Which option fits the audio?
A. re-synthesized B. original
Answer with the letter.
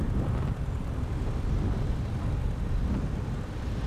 B